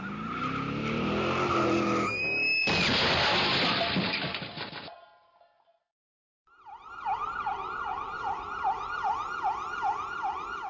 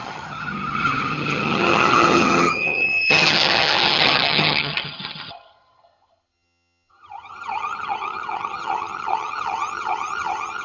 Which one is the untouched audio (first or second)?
first